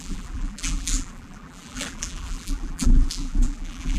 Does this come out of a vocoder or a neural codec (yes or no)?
yes